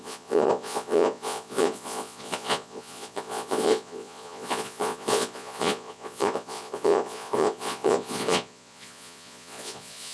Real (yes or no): no